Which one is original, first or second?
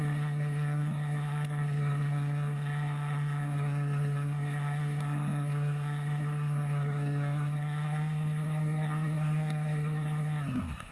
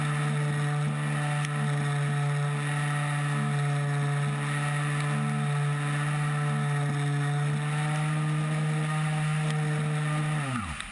second